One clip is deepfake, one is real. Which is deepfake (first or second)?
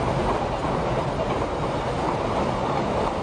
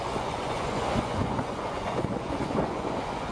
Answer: second